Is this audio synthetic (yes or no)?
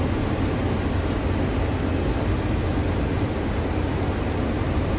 no